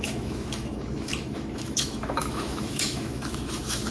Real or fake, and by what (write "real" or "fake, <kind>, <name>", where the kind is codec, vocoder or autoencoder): fake, autoencoder, DAC-VAE